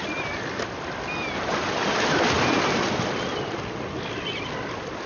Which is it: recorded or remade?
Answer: recorded